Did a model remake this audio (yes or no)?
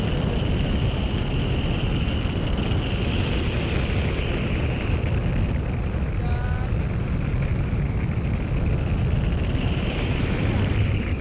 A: no